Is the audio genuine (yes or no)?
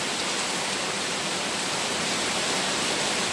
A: yes